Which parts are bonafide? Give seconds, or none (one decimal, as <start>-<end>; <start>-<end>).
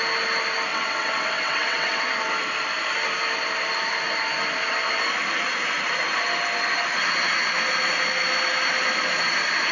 0.0-0.7; 2.0-9.7